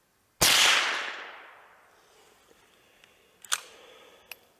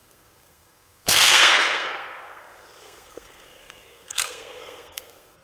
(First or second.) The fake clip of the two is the second